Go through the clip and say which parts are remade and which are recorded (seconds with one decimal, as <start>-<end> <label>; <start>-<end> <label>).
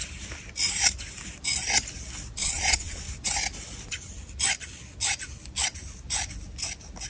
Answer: 0.0-2.4 recorded; 2.4-3.0 remade; 3.0-7.1 recorded